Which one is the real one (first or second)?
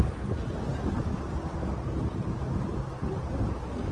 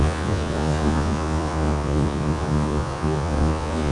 first